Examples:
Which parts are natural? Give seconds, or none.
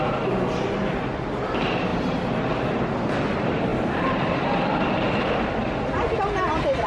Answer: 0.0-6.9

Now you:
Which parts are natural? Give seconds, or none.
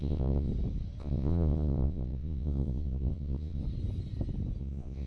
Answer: 0.5-1.0; 3.6-4.6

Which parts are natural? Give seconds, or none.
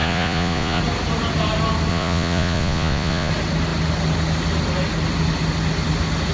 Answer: 0.8-1.9; 3.3-6.3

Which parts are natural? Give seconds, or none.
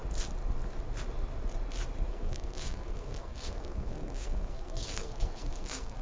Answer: 0.0-2.1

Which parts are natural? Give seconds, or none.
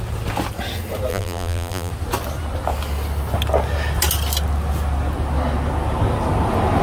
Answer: 0.0-1.1; 1.9-6.8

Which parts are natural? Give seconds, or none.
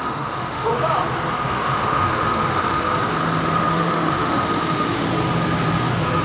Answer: 0.7-1.3; 2.9-3.7; 5.1-5.8